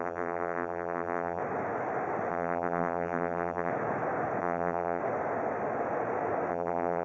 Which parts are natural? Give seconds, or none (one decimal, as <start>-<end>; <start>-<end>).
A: 1.4-2.3; 3.7-4.4; 5.0-6.5